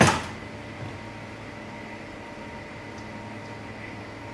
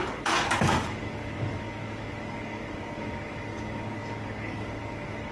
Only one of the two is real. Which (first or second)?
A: first